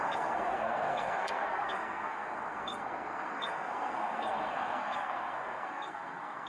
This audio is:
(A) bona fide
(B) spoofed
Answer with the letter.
B